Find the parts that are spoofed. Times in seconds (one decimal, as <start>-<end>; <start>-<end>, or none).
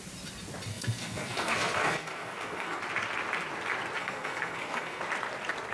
0.7-2.8; 4.0-5.0